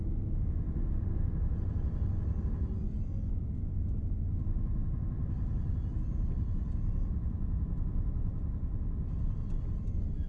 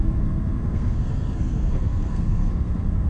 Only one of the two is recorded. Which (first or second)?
first